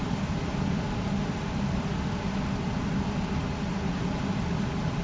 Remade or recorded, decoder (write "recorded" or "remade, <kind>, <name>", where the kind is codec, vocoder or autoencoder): recorded